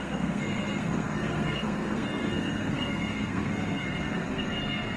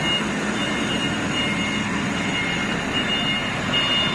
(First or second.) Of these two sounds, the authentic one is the second